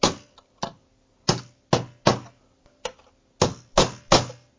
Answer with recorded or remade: recorded